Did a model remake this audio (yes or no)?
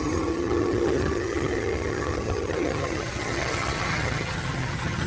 yes